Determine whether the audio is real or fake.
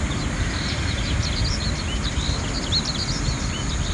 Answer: real